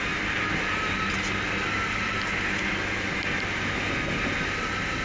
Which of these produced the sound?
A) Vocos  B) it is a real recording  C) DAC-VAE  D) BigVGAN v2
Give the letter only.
B